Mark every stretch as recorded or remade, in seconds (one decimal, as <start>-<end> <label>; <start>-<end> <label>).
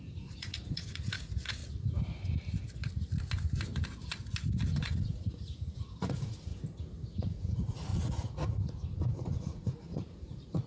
0.0-1.6 remade; 1.6-4.8 recorded; 4.8-6.5 remade; 6.5-7.2 recorded; 7.2-10.7 remade